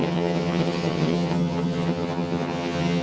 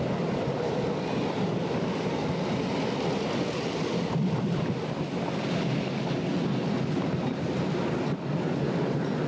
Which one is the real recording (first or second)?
second